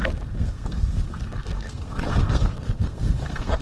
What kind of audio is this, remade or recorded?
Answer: remade